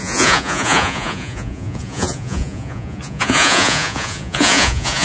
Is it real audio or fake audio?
fake